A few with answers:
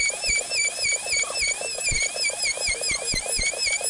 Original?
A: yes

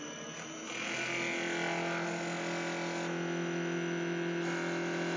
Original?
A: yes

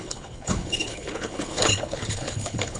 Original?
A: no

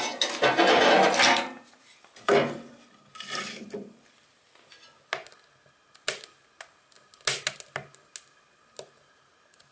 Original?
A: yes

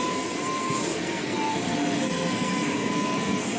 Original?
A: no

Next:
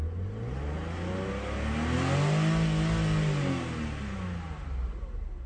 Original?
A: yes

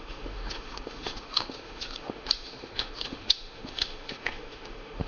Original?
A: no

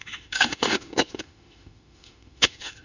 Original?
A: no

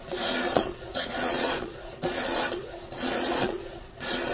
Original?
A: no